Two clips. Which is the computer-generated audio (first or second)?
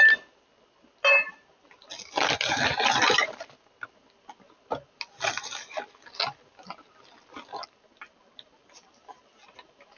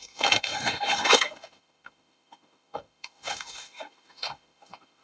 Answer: second